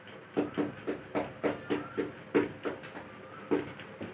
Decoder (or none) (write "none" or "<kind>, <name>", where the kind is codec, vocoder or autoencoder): none